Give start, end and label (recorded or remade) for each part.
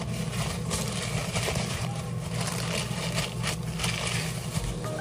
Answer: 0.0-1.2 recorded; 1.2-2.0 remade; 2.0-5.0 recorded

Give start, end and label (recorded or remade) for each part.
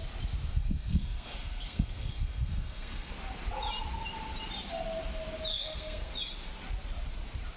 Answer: 0.0-0.5 recorded; 0.5-3.1 remade; 3.1-5.5 recorded; 5.5-6.1 remade; 6.1-7.6 recorded